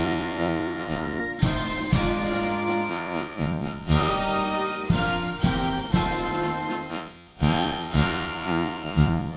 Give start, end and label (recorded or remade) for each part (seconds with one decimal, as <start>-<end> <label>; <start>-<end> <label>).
0.0-1.2 remade; 1.2-2.9 recorded; 2.9-4.1 remade; 4.1-6.9 recorded; 6.9-9.4 remade